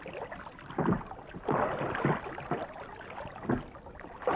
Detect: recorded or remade recorded